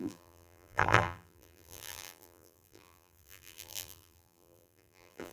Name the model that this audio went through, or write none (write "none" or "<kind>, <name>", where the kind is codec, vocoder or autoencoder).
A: vocoder, BigVGAN v2